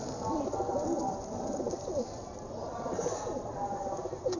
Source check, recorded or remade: remade